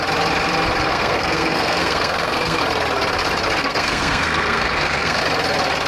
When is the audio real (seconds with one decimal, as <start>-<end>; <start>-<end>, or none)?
0.0-0.9; 2.6-3.6; 5.2-5.9

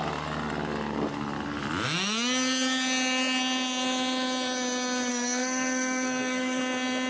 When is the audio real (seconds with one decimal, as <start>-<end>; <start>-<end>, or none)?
0.0-5.1; 6.6-7.1

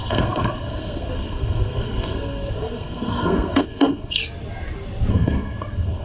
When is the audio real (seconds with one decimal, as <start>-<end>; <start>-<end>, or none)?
4.2-5.1

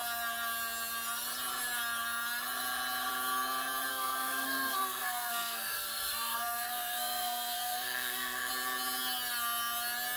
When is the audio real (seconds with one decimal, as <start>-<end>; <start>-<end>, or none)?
0.0-3.9; 8.5-10.2

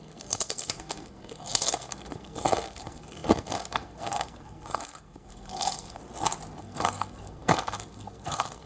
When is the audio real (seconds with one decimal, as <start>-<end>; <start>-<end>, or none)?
6.0-6.6

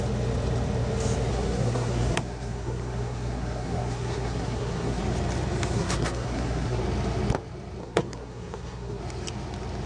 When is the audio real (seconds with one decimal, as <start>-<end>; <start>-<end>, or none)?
0.0-1.3; 5.0-5.7; 6.8-7.8; 9.0-9.9